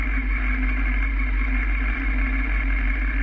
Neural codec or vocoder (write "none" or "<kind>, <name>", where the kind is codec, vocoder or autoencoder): none